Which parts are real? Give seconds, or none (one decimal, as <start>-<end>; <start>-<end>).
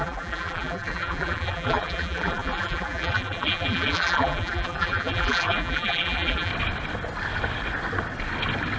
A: 6.5-8.8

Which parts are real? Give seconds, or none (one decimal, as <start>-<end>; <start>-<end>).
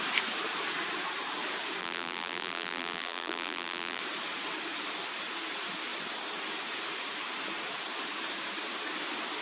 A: 0.0-1.8; 4.0-9.4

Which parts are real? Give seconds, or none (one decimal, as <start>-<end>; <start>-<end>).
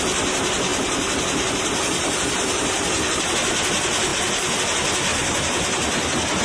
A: 0.0-0.7; 3.3-4.1; 4.6-5.1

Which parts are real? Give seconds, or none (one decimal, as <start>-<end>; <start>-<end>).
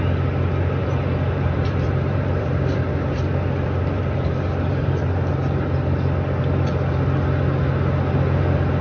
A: 0.0-0.8; 5.3-8.8